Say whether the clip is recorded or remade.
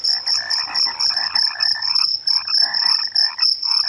remade